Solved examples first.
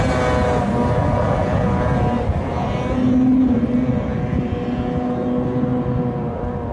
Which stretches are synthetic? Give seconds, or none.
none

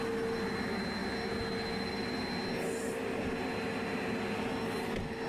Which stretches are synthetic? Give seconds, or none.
none

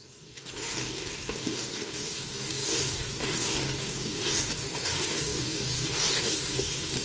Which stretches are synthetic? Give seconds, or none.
0.0-7.0 (codec, DAC)

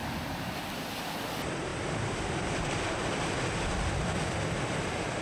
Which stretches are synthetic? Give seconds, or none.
0.0-5.2 (vocoder, BigVGAN v2)

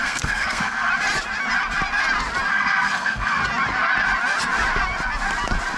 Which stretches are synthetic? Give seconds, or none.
0.0-0.9 (codec, SNAC); 2.5-3.4

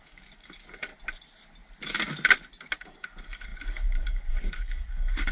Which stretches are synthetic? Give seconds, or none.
0.0-0.9 (codec, DAC); 2.8-5.3

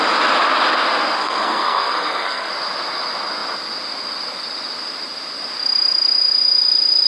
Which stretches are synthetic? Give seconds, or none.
1.2-2.5 (codec, SNAC)

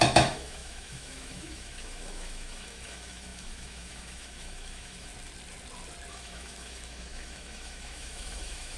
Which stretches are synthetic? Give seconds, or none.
0.0-5.1 (autoencoder, DAC-VAE); 6.1-8.8